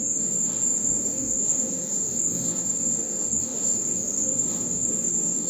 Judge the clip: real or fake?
fake